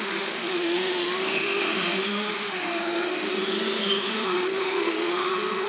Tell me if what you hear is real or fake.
fake